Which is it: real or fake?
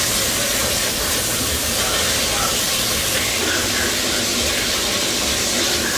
real